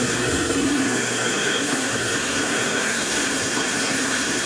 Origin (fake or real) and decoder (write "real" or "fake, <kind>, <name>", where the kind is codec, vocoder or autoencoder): fake, codec, SNAC